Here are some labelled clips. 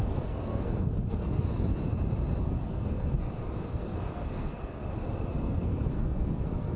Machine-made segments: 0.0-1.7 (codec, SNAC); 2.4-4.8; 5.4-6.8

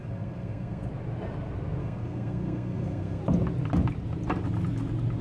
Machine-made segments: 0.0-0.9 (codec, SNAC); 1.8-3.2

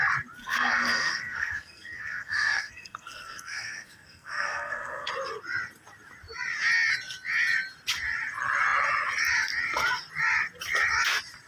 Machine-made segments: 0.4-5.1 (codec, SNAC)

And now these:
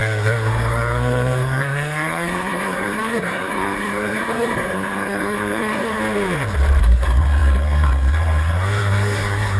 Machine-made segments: 0.0-6.0 (codec, SNAC); 6.8-9.6

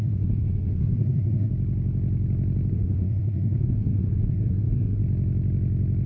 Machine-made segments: 0.0-1.5 (codec, SNAC); 2.7-5.0

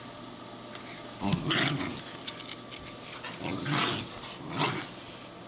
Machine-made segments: none